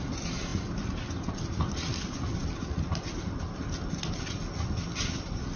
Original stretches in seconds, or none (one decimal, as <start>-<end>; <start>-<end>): 0.0-5.6